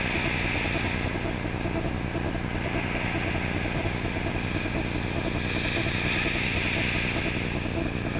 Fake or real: real